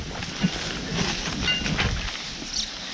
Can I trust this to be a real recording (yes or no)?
yes